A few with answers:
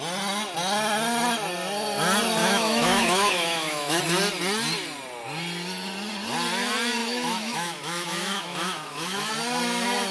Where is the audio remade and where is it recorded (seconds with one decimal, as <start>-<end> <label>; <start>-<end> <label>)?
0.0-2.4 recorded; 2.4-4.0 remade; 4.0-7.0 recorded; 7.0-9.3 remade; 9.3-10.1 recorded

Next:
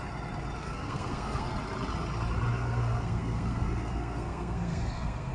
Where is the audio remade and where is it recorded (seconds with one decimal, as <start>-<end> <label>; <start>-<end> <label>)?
0.0-0.6 recorded; 0.6-1.5 remade; 1.5-2.5 recorded; 2.5-5.3 remade

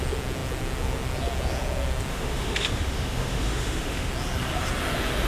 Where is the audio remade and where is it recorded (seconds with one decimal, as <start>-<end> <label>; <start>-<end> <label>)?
0.0-2.1 recorded; 2.1-4.1 remade; 4.1-5.3 recorded

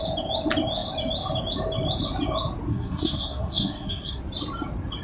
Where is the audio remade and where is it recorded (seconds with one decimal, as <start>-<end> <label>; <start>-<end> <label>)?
0.0-2.7 recorded; 2.7-4.2 remade; 4.2-5.0 recorded

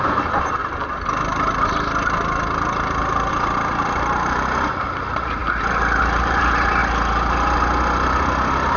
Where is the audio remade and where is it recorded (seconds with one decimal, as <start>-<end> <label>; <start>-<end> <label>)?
0.0-0.6 remade; 0.6-3.3 recorded; 3.3-5.4 remade; 5.4-6.0 recorded; 6.0-6.8 remade; 6.8-8.8 recorded

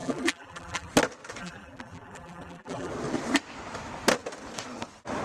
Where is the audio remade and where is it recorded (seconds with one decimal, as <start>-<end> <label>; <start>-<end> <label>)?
0.0-0.9 remade; 0.9-1.4 recorded; 1.4-2.9 remade; 2.9-5.2 recorded